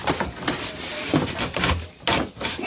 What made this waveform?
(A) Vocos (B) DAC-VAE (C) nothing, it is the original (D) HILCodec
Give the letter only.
C